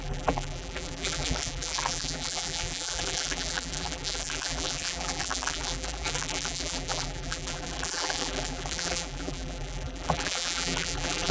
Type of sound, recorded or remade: remade